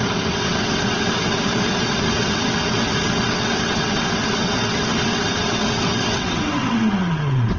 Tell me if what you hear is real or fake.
fake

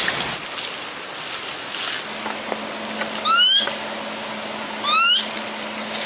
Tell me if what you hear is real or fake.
real